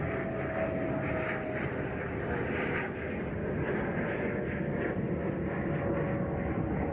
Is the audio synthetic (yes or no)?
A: no